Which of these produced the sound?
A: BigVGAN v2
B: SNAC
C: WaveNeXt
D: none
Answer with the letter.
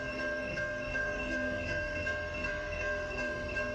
B